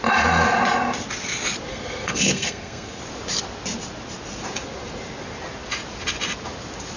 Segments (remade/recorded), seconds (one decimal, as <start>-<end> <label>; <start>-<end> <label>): 0.0-1.7 recorded; 1.7-3.0 remade; 3.0-7.0 recorded